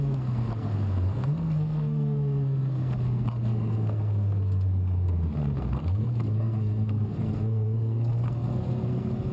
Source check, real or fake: fake